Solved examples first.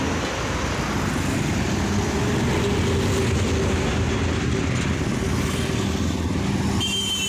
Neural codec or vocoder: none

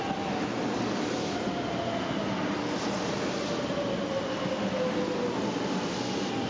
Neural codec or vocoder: none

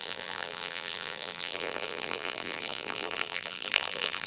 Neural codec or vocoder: vocoder, BigVGAN v2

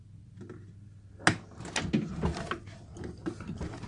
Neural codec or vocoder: none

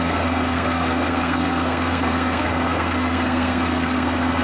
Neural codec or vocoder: codec, SNAC